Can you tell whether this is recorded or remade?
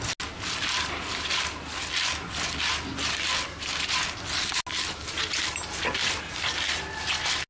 recorded